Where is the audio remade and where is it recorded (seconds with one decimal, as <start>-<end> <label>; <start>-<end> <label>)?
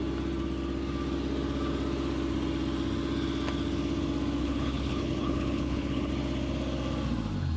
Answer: 0.0-4.4 recorded; 4.4-6.1 remade; 6.1-7.6 recorded